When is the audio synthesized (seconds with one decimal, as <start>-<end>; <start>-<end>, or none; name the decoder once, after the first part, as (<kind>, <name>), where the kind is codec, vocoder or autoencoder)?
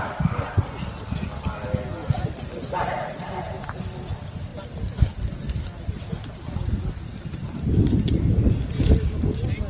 none